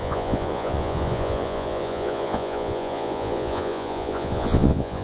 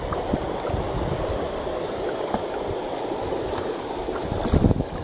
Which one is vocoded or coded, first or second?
first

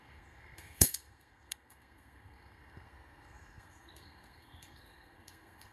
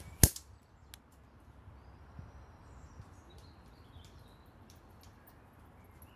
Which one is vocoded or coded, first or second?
first